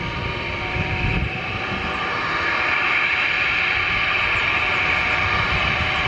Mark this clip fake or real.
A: fake